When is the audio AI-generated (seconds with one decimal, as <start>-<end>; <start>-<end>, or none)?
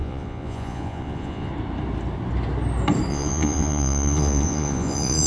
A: 0.0-1.5; 3.1-5.3